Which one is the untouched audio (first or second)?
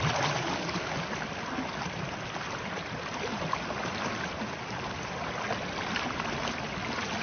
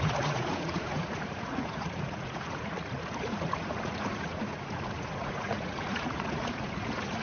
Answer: first